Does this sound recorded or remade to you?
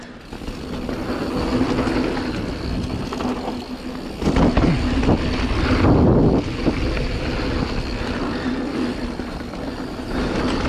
recorded